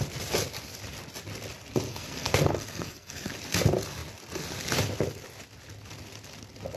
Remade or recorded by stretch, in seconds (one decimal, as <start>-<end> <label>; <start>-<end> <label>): 0.0-1.9 recorded; 1.9-3.3 remade; 3.3-6.8 recorded

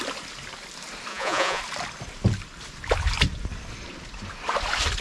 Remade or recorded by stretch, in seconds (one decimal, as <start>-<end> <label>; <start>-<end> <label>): 0.0-1.1 recorded; 1.1-1.6 remade; 1.6-5.0 recorded

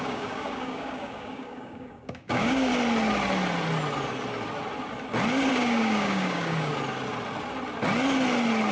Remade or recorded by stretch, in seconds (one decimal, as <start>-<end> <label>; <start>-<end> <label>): 0.0-2.7 remade; 2.7-5.5 recorded; 5.5-6.7 remade; 6.7-8.7 recorded